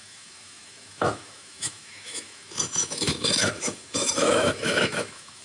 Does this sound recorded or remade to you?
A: remade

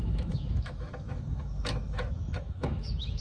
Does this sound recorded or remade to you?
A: remade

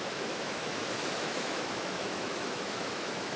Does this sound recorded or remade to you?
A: remade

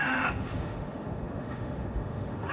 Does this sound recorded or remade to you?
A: remade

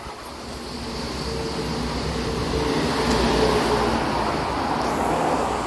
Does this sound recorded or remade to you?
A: recorded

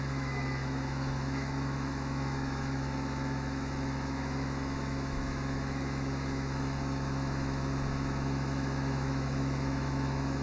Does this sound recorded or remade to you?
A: remade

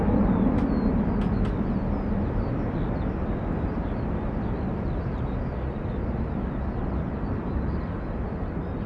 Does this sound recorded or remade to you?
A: recorded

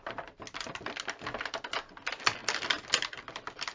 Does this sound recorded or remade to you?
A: recorded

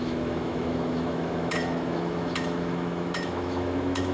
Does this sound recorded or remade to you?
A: remade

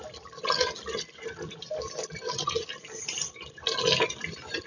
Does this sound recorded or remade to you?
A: recorded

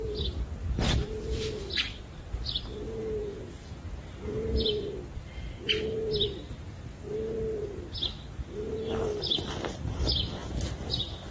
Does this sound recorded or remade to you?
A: recorded